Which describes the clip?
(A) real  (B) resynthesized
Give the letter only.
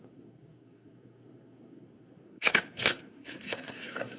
B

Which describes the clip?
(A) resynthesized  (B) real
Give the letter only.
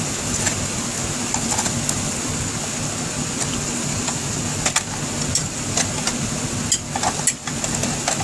B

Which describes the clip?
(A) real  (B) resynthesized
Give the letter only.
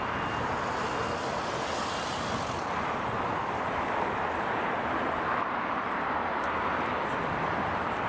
A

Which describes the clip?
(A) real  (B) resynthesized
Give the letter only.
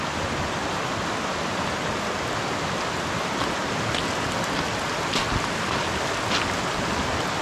A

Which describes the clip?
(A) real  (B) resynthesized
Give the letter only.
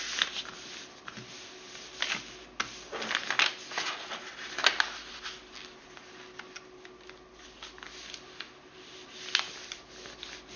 A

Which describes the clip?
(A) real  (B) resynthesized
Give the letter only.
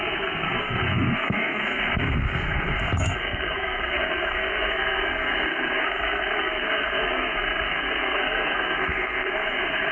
B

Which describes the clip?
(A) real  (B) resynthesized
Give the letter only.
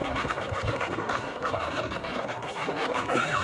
B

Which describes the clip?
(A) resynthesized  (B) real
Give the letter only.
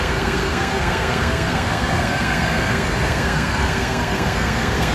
A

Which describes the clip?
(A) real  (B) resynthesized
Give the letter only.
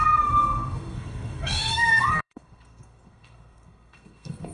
B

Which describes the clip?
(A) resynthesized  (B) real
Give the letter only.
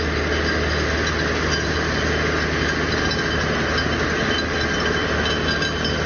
B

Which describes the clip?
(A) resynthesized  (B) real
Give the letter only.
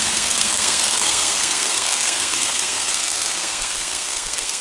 A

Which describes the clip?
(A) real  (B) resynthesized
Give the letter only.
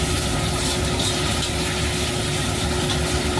A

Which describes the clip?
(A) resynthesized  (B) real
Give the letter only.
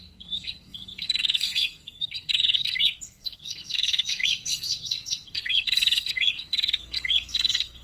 A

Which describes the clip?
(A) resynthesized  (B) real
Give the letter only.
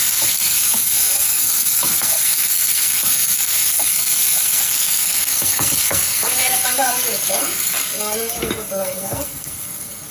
A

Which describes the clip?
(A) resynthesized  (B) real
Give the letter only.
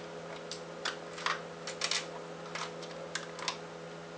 B